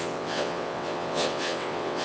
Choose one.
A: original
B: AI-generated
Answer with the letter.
B